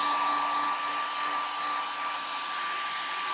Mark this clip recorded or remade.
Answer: recorded